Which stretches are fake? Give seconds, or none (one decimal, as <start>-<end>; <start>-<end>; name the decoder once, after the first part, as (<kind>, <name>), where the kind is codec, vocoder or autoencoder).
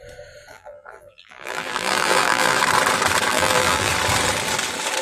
0.5-2.6 (vocoder, BigVGAN v2); 3.3-3.9